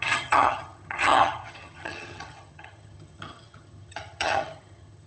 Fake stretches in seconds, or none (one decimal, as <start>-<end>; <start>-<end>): 0.0-5.1